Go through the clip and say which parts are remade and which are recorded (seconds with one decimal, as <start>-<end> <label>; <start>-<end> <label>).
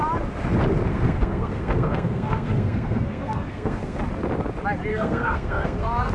0.0-0.9 recorded; 0.9-4.0 remade; 4.0-4.9 recorded; 4.9-6.1 remade